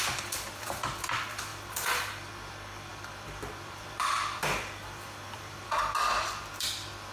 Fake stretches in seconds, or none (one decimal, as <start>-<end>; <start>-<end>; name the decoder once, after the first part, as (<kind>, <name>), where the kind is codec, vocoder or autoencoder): 0.0-7.1 (vocoder, BigVGAN v2)